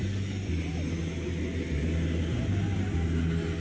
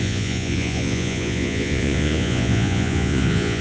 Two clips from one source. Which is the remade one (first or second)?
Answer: second